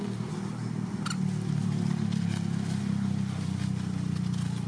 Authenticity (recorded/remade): recorded